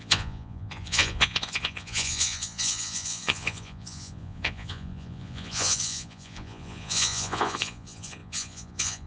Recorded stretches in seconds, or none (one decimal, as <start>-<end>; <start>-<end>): none